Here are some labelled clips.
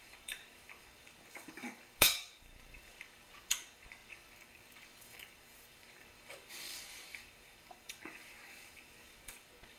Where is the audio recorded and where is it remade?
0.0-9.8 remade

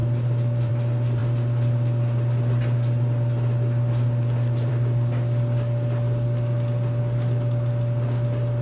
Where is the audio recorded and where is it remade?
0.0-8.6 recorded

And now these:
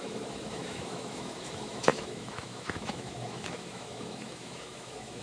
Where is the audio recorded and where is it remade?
0.0-5.2 remade